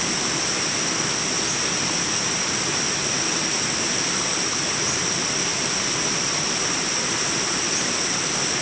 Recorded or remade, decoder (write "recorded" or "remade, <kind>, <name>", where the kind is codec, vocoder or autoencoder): recorded